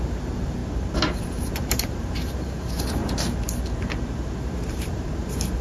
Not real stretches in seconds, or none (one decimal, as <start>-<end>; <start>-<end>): 0.0-0.6; 1.2-3.0; 4.3-5.6